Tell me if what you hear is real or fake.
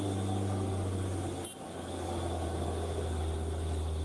real